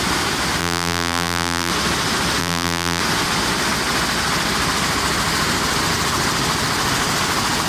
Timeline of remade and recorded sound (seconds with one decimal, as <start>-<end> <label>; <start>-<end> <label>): 0.0-0.6 recorded; 0.6-1.7 remade; 1.7-2.4 recorded; 2.4-3.0 remade; 3.0-7.7 recorded